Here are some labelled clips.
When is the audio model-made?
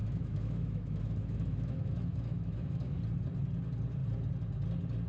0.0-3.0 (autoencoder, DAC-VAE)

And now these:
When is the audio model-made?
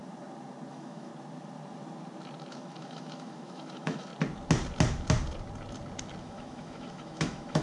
0.7-1.1 (autoencoder, DAC-VAE); 2.5-4.1; 6.2-7.6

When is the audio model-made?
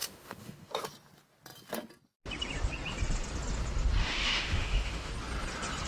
0.0-0.8 (autoencoder, DAC-VAE); 4.0-5.1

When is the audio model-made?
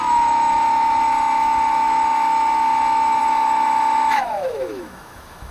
0.0-5.5 (autoencoder, DAC-VAE)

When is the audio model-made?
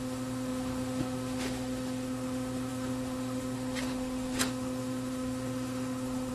0.0-6.3 (autoencoder, DAC-VAE)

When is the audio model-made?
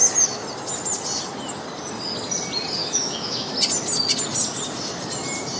2.8-3.5 (autoencoder, DAC-VAE)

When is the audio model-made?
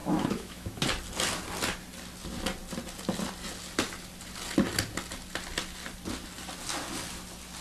0.0-0.8 (autoencoder, DAC-VAE)